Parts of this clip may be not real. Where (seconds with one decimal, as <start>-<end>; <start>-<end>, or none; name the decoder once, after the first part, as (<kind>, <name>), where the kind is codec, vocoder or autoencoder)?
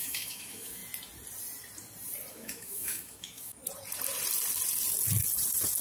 0.0-0.8 (autoencoder, DAC-VAE); 2.3-3.6